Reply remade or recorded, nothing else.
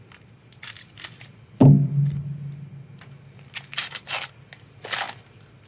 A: recorded